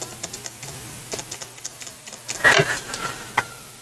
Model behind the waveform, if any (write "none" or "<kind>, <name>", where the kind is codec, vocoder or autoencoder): none